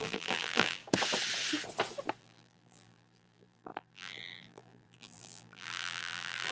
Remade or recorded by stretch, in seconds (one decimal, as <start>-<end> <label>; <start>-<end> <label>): 0.0-0.8 remade; 0.8-2.2 recorded; 2.2-6.5 remade